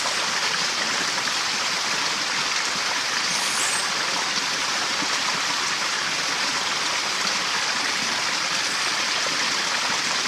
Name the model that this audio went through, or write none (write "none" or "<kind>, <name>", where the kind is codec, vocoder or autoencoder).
none